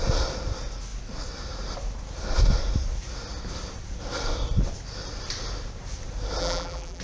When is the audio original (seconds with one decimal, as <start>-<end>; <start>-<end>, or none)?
0.0-6.4